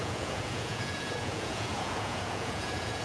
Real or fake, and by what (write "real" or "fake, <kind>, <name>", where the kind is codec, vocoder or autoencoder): fake, vocoder, Vocos